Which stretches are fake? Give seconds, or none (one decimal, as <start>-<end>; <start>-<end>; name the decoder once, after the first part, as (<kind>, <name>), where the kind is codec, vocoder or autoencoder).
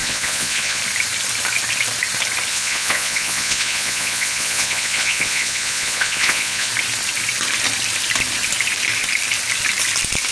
0.0-0.8 (vocoder, Vocos); 2.5-6.7